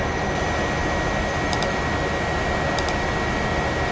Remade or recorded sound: recorded